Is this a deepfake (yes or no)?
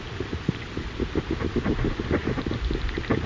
no